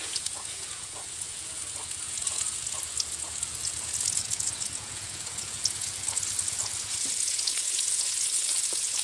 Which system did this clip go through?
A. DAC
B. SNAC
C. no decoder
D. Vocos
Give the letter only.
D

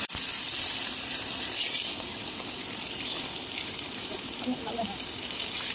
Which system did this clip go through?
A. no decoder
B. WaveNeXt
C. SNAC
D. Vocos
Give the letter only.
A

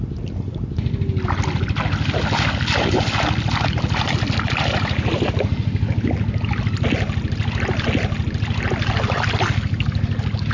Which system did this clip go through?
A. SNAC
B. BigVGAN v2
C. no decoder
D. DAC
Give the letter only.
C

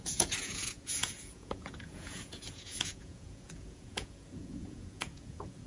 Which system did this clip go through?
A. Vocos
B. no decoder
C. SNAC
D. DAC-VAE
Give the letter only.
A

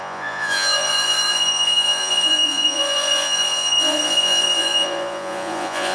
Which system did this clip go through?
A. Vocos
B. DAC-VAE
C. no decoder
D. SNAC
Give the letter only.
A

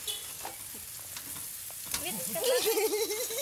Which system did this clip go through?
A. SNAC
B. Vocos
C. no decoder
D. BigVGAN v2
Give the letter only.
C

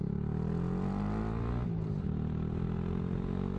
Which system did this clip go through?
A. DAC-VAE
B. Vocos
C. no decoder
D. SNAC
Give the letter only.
C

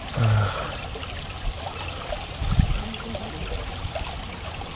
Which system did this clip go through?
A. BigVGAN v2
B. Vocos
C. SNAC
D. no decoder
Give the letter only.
D